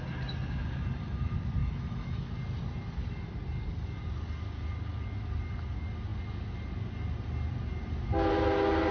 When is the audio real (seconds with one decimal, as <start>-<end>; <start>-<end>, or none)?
0.0-1.6; 2.3-8.9